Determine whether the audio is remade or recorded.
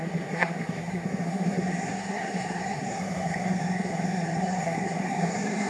remade